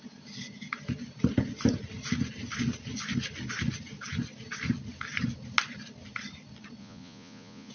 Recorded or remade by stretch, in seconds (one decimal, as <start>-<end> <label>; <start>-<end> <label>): 0.0-6.8 recorded; 6.8-7.7 remade